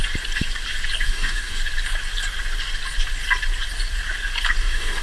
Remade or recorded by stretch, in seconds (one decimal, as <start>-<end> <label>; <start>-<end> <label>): 0.0-1.0 recorded; 1.0-1.6 remade; 1.6-4.6 recorded; 4.6-5.0 remade